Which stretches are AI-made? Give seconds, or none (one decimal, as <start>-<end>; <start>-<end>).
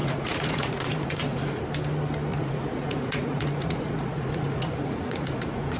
0.0-1.6; 2.3-5.8